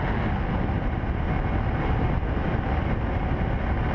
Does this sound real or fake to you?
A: real